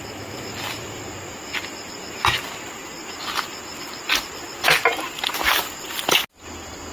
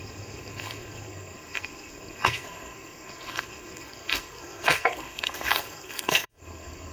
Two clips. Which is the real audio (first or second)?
first